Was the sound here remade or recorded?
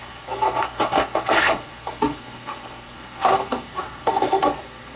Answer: remade